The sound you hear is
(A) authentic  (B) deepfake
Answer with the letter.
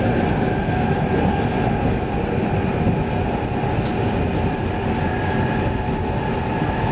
A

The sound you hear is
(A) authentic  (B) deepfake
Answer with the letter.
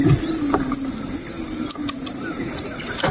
A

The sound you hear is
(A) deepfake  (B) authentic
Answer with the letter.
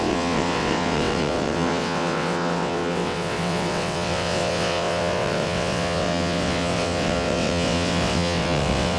A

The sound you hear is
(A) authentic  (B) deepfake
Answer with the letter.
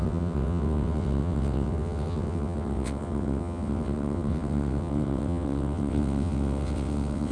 B